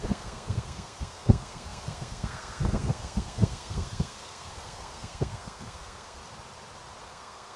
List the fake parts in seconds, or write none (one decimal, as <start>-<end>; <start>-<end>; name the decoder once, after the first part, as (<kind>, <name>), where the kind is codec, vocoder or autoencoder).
0.0-6.2 (codec, SNAC); 7.0-7.6